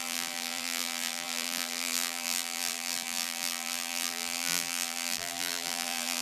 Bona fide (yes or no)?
no